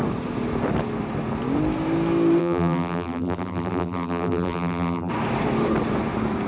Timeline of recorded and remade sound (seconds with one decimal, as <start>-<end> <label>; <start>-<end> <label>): 0.0-2.4 recorded; 2.4-5.1 remade; 5.1-6.5 recorded